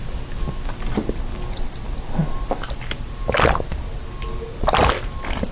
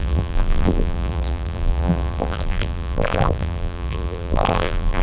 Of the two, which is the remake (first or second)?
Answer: second